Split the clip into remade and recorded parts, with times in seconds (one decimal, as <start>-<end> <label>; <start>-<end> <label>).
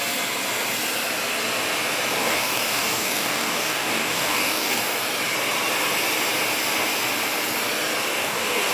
0.0-2.2 recorded; 2.2-4.8 remade; 4.8-8.2 recorded; 8.2-8.7 remade